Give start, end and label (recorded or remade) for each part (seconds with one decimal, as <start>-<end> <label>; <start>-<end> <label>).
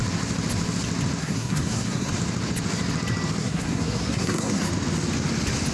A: 0.0-1.2 recorded; 1.2-2.1 remade; 2.1-3.4 recorded; 3.4-4.7 remade; 4.7-5.7 recorded